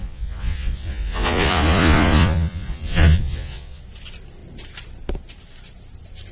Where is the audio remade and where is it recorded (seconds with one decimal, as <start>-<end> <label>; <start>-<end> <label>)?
0.0-3.8 remade; 3.8-6.3 recorded

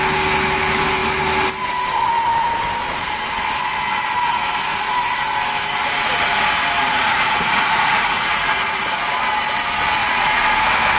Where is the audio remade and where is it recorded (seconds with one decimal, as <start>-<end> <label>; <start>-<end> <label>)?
0.0-6.8 recorded; 6.8-9.2 remade; 9.2-10.0 recorded; 10.0-10.6 remade; 10.6-11.0 recorded

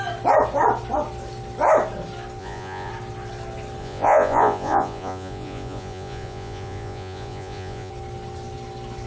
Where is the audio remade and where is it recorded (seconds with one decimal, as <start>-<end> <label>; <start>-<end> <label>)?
0.0-2.4 recorded; 2.4-2.9 remade; 2.9-3.8 recorded; 3.8-7.9 remade; 7.9-9.1 recorded

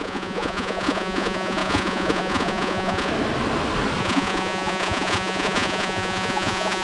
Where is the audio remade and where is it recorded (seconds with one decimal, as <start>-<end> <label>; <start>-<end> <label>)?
0.0-3.1 remade; 3.1-4.0 recorded; 4.0-6.8 remade

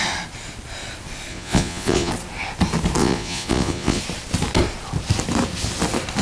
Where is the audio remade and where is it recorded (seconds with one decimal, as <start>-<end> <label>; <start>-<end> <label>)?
0.0-1.3 recorded; 1.3-2.1 remade; 2.1-3.0 recorded; 3.0-4.0 remade; 4.0-6.2 recorded

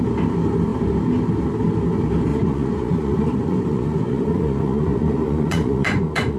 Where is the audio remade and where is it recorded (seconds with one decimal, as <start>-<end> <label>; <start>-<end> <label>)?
0.0-2.3 recorded; 2.3-6.4 remade